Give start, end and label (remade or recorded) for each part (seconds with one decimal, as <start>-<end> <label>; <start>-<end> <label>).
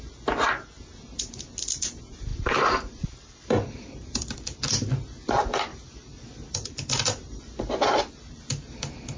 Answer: 0.0-2.3 recorded; 2.3-4.3 remade; 4.3-5.7 recorded; 5.7-7.4 remade; 7.4-9.2 recorded